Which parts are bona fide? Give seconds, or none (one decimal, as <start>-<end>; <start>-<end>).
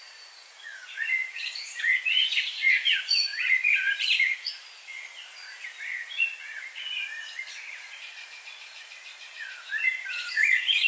4.9-5.9